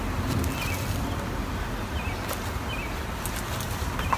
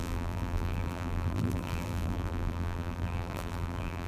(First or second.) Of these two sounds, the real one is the first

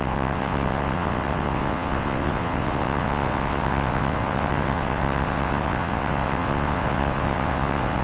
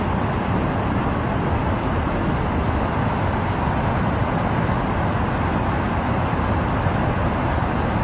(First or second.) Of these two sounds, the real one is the second